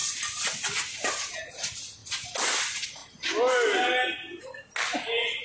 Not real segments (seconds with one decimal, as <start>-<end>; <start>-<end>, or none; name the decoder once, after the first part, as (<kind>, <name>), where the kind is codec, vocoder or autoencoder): none